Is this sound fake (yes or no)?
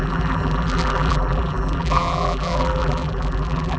yes